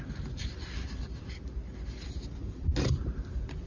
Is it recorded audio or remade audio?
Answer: recorded